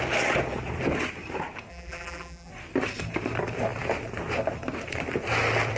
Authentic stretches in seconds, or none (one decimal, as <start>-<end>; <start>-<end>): 0.0-1.7; 2.5-5.8